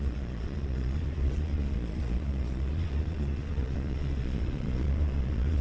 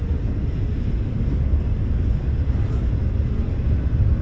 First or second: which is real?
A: second